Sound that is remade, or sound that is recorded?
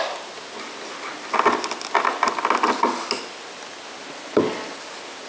recorded